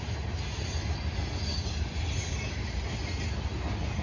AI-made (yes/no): no